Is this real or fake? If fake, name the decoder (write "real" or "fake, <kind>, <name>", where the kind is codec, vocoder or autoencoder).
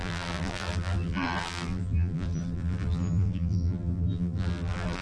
fake, vocoder, BigVGAN v2